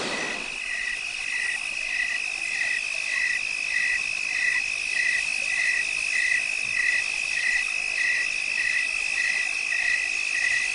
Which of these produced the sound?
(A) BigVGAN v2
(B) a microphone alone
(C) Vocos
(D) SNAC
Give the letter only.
B